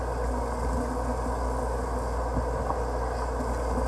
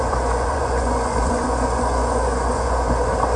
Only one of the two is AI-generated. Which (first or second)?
second